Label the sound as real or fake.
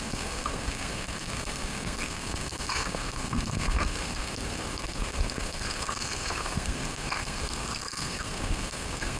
fake